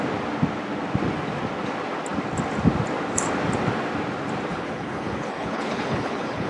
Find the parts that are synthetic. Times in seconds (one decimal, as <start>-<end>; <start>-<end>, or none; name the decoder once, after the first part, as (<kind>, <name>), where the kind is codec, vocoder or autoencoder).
4.5-6.5 (codec, HILCodec)